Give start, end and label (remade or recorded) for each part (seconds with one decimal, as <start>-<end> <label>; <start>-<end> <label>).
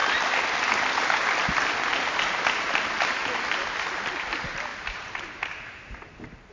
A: 0.0-4.7 recorded; 4.7-6.5 remade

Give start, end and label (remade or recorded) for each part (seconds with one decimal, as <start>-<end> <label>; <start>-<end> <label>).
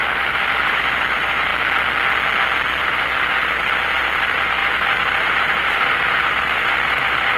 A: 0.0-1.5 remade; 1.5-2.8 recorded; 2.8-7.4 remade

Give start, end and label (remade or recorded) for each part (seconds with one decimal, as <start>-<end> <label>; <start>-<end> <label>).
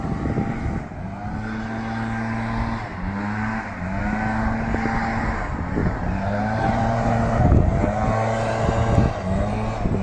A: 0.0-5.8 recorded; 5.8-7.1 remade; 7.1-10.0 recorded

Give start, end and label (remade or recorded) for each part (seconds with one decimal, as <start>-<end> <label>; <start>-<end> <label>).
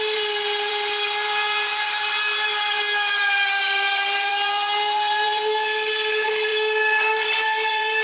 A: 0.0-8.0 remade